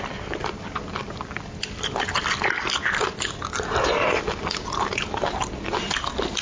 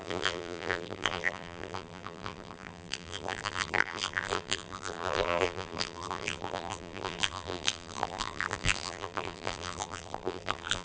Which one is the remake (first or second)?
second